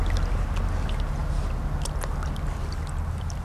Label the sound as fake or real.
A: real